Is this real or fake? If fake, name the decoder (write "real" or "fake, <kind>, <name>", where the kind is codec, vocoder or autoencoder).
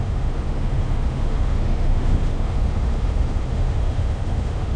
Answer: fake, autoencoder, DAC-VAE